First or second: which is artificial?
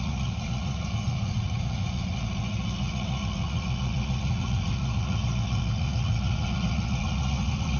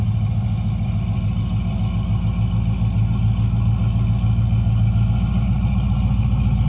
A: first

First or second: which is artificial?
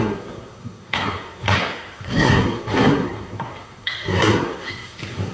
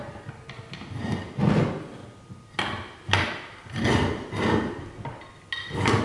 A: first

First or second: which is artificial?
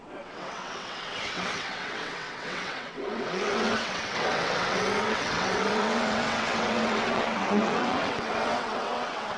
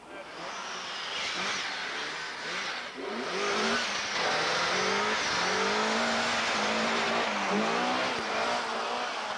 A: first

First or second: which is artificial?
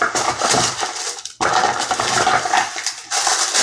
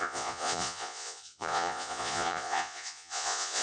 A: second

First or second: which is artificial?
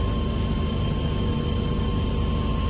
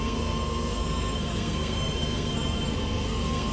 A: second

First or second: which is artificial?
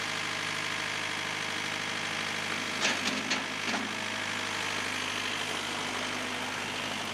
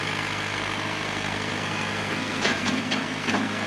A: second